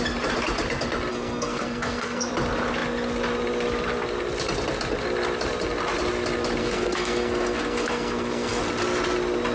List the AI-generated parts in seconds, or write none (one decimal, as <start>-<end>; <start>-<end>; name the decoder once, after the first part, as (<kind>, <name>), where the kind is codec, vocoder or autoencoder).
1.1-2.3 (codec, SNAC); 6.6-8.6